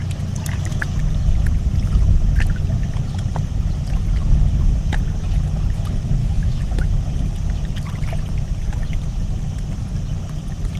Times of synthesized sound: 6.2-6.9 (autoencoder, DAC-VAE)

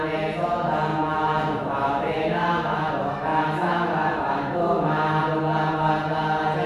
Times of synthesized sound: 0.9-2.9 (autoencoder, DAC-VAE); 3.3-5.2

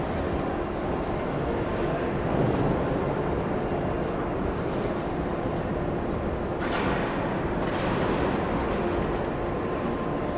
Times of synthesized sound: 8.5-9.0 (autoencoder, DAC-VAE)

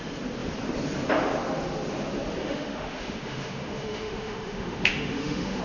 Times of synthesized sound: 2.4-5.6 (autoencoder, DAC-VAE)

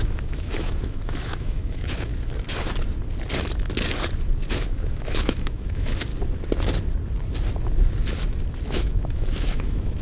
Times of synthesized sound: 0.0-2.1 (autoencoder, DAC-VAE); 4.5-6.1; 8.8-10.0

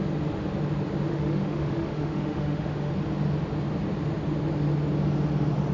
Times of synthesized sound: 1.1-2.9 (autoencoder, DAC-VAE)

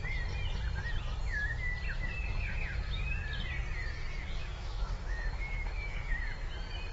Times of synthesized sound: 4.4-6.5 (autoencoder, DAC-VAE)